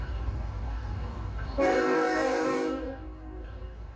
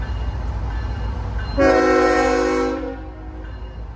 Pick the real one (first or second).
second